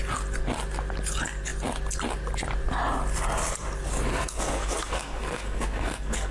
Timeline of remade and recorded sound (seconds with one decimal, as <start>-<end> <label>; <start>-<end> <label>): 0.0-4.1 recorded; 4.1-6.3 remade

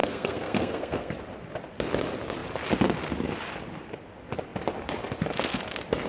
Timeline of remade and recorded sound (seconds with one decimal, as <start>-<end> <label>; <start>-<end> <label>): 0.0-1.1 remade; 1.1-6.1 recorded

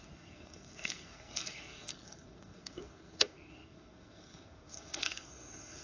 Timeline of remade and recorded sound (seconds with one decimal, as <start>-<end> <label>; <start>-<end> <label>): 0.0-5.8 remade

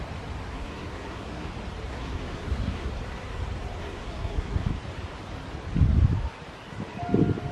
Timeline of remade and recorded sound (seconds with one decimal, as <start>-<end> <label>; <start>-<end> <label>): 0.0-0.5 recorded; 0.5-1.5 remade; 1.5-1.9 recorded; 1.9-2.9 remade; 2.9-3.8 recorded; 3.8-4.7 remade; 4.7-7.5 recorded